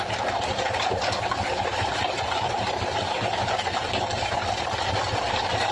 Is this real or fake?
real